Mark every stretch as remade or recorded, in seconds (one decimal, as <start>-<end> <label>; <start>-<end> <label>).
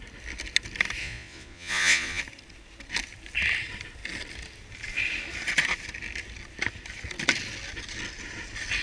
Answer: 0.0-1.0 recorded; 1.0-2.2 remade; 2.2-8.8 recorded